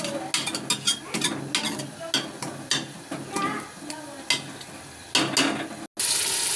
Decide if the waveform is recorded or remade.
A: recorded